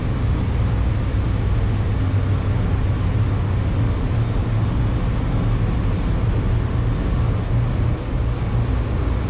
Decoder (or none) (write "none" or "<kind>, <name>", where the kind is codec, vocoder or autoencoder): none